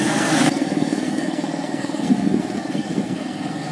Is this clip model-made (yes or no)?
yes